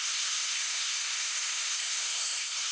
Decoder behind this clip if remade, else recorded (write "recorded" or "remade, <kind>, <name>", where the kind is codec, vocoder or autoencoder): remade, codec, SNAC